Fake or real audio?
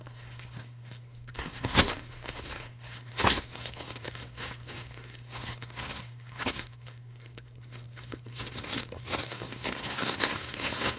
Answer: fake